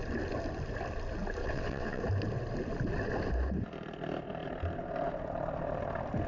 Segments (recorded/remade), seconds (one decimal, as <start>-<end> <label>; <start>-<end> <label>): 0.0-1.4 recorded; 1.4-2.0 remade; 2.0-6.3 recorded

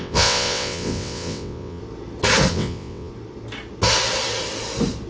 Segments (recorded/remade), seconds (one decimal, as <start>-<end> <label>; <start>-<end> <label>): 0.0-1.8 remade; 1.8-2.5 recorded; 2.5-3.1 remade; 3.1-5.1 recorded

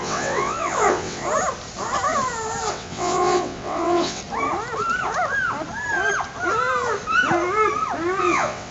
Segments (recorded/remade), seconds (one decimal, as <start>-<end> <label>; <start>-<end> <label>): 0.0-1.2 remade; 1.2-2.7 recorded; 2.7-4.2 remade; 4.2-8.2 recorded; 8.2-8.7 remade

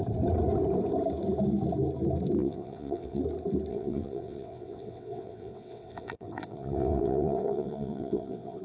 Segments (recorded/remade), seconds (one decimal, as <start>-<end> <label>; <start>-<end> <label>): 0.0-2.4 recorded; 2.4-3.2 remade; 3.2-3.7 recorded; 3.7-8.6 remade